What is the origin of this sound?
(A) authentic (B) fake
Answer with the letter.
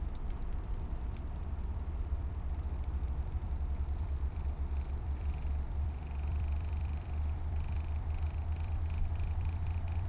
B